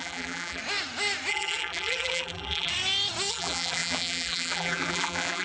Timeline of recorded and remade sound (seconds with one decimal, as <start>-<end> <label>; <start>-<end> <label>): 0.0-0.6 remade; 0.6-1.3 recorded; 1.3-2.7 remade; 2.7-3.3 recorded; 3.3-5.4 remade